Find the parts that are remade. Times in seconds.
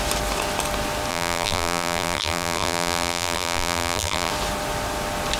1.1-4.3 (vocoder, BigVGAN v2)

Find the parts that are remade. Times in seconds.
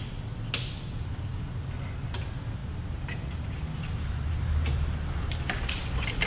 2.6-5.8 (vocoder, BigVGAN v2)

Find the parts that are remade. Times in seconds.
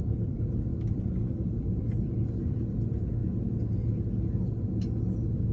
0.7-1.8 (vocoder, BigVGAN v2)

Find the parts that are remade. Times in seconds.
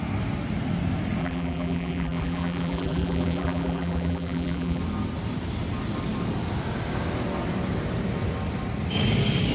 1.2-4.8 (vocoder, BigVGAN v2)